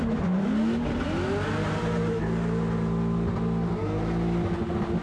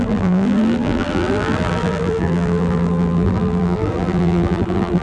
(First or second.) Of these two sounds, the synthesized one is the second